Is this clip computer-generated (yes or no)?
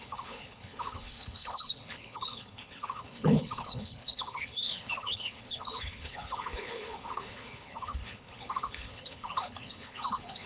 yes